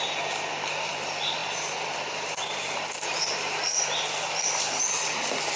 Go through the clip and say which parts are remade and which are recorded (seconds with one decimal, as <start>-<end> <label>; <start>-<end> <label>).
0.0-1.4 recorded; 1.4-4.8 remade; 4.8-5.6 recorded